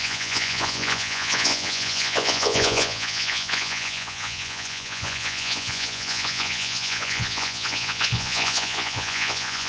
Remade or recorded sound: remade